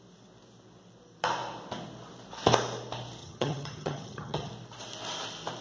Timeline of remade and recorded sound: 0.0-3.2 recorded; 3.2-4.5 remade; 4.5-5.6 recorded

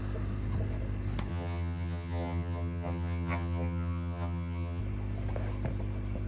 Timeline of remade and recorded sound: 0.0-1.3 recorded; 1.3-4.8 remade; 4.8-6.3 recorded

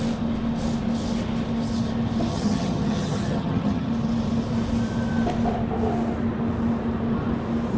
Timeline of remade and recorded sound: 0.0-2.3 recorded; 2.3-3.9 remade; 3.9-7.8 recorded

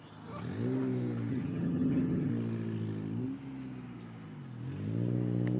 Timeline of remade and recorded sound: 0.0-1.3 recorded; 1.3-2.3 remade; 2.3-5.6 recorded